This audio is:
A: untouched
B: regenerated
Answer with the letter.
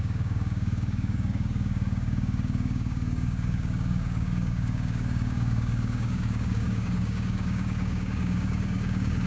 B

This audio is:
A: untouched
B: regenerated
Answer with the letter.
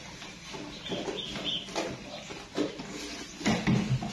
A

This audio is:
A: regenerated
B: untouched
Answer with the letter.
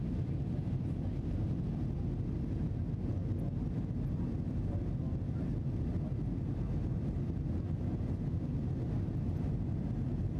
B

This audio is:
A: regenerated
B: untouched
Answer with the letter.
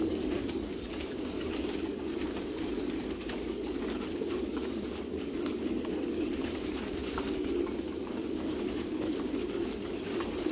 A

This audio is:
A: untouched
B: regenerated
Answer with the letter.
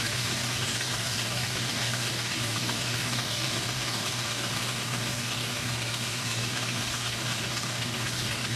B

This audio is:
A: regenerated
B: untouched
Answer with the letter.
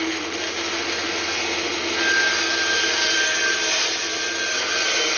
B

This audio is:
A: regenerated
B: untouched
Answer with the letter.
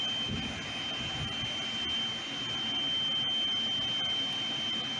B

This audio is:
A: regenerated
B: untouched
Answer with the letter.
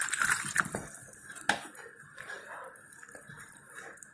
B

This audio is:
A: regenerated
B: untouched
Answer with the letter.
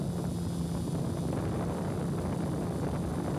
B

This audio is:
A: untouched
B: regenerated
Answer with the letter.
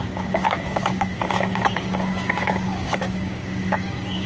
B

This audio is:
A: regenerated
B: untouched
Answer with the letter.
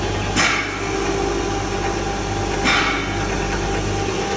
B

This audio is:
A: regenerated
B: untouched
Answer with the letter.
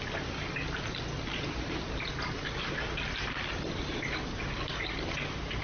B